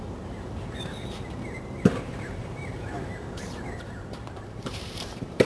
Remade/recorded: remade